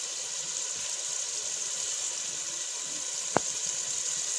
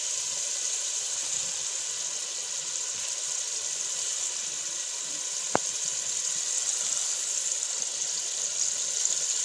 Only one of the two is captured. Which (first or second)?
second